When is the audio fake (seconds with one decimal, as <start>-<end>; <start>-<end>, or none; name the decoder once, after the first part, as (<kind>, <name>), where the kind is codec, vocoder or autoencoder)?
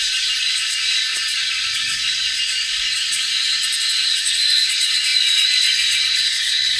0.0-3.3 (codec, DAC); 4.1-6.8